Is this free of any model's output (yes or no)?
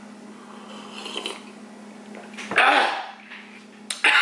yes